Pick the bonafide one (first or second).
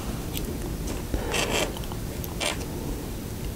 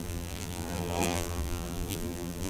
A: first